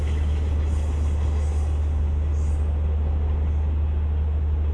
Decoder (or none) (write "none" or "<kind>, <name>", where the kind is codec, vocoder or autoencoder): none